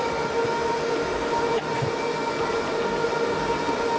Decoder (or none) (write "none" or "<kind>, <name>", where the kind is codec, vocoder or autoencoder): none